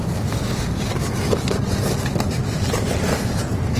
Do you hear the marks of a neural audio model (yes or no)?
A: no